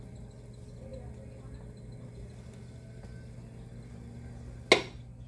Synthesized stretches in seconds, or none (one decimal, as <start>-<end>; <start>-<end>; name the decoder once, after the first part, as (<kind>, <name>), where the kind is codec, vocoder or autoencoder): none